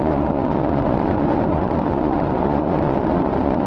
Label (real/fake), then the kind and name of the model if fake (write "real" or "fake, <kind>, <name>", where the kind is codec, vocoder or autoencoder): fake, vocoder, Vocos